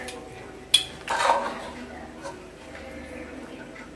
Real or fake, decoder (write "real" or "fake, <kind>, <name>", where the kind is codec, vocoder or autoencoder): real